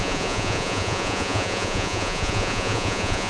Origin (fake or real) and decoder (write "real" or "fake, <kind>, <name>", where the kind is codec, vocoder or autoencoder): fake, vocoder, Vocos